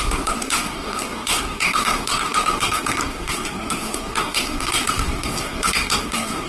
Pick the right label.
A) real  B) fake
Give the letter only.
B